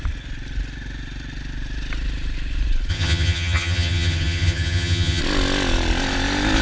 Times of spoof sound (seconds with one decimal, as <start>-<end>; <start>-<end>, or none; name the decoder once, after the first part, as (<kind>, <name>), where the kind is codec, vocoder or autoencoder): 2.9-5.2 (vocoder, HiFi-GAN)